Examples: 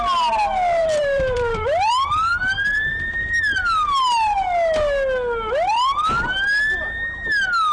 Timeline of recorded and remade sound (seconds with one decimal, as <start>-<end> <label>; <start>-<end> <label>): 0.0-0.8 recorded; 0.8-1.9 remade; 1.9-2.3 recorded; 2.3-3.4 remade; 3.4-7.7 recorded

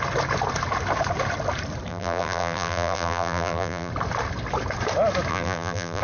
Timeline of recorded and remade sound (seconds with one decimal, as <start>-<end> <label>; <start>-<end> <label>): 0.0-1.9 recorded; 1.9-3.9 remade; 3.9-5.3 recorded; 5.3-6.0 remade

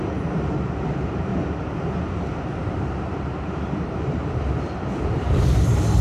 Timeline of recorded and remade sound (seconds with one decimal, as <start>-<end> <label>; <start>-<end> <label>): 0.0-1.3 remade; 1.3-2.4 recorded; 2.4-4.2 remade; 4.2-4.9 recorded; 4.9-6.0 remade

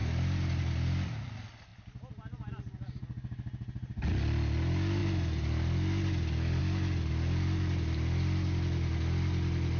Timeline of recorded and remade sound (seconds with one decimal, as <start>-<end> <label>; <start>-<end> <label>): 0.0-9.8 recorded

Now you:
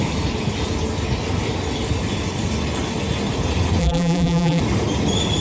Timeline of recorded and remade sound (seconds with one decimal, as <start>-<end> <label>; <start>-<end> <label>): 0.0-3.8 recorded; 3.8-4.6 remade; 4.6-5.4 recorded

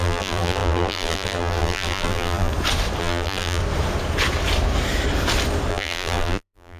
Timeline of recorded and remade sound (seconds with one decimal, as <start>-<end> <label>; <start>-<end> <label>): 0.0-2.5 remade; 2.5-3.0 recorded; 3.0-3.6 remade; 3.6-5.7 recorded; 5.7-6.8 remade

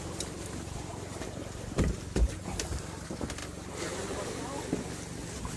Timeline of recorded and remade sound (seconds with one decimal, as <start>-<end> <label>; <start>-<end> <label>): 0.0-0.9 recorded; 0.9-2.4 remade; 2.4-5.6 recorded

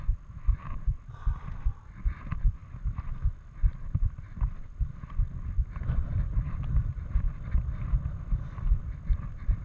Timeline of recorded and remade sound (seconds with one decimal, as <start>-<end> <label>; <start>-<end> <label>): 0.0-2.6 recorded; 2.6-4.9 remade; 4.9-6.7 recorded; 6.7-7.9 remade; 7.9-9.6 recorded